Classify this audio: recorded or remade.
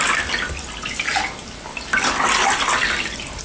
recorded